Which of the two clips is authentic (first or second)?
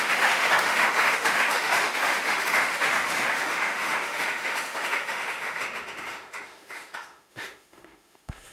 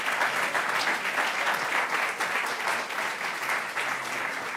second